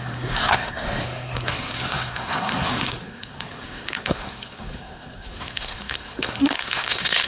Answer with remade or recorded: remade